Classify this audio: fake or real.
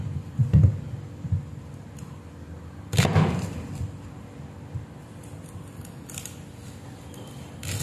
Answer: real